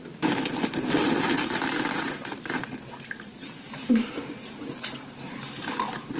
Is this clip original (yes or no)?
no